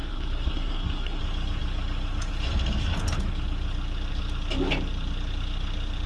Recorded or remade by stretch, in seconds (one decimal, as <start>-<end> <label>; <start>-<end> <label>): 0.0-1.2 remade; 1.2-6.1 recorded